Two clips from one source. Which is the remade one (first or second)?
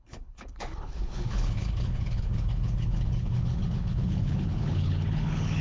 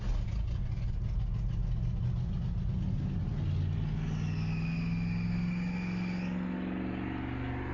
first